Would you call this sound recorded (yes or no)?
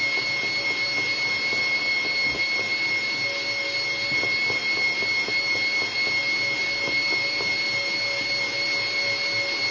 yes